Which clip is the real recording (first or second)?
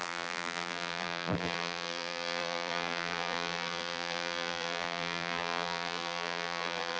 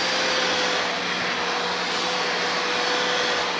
second